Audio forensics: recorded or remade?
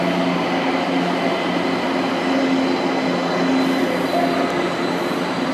recorded